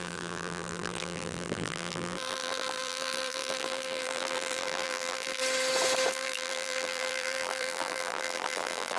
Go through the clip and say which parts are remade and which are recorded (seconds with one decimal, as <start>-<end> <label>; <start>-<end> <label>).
0.0-5.4 remade; 5.4-6.1 recorded; 6.1-9.0 remade